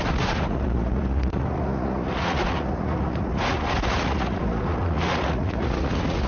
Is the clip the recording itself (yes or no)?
no